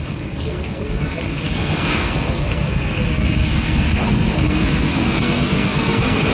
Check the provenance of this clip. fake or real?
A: fake